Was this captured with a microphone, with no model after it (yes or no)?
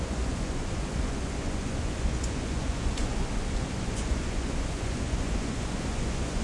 no